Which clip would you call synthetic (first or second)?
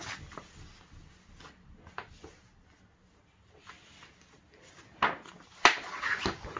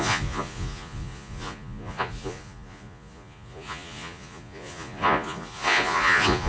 second